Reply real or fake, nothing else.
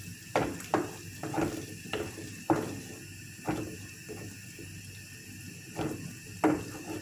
real